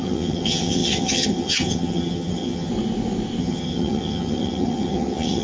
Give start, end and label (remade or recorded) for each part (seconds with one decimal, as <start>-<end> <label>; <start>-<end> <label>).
0.0-2.7 remade; 2.7-3.4 recorded; 3.4-5.4 remade